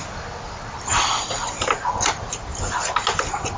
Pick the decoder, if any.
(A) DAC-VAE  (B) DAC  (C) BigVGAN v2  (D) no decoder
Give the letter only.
D